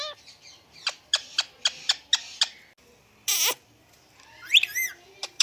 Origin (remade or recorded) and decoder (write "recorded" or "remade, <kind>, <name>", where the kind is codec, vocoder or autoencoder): recorded